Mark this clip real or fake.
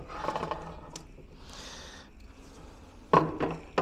real